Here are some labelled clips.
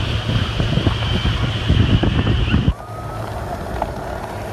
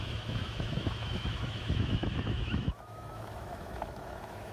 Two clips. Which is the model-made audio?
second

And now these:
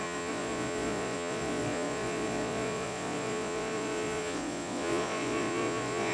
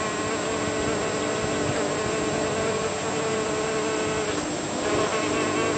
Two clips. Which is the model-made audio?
first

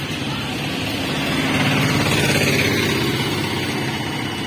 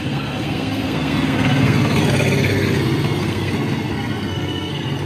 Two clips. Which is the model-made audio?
second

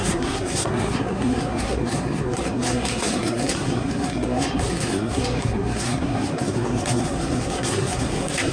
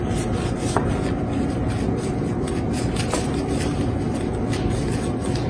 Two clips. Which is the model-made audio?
first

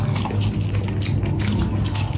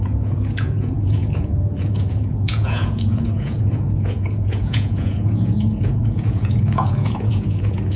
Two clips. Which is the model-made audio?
second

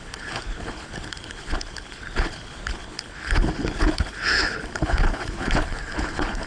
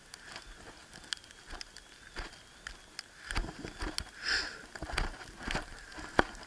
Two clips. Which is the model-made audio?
first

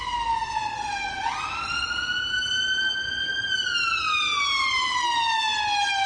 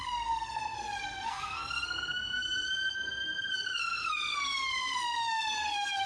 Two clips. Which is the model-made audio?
second